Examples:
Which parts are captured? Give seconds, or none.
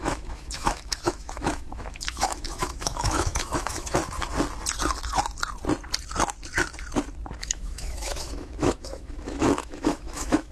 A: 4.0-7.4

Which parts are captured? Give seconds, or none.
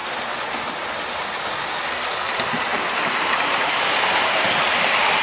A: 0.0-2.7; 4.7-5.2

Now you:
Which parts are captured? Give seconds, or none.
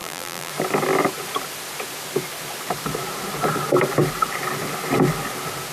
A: 0.5-5.7